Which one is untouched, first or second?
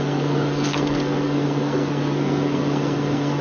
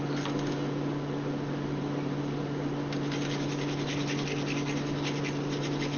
second